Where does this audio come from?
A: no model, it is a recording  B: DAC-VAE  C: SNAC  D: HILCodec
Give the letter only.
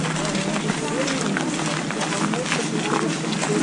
A